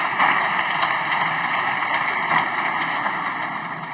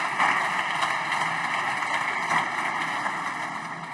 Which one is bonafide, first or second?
second